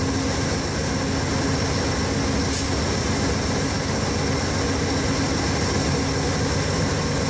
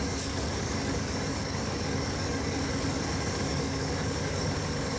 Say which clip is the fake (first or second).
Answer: second